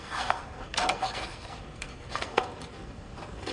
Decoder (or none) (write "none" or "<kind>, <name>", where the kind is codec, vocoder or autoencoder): codec, SNAC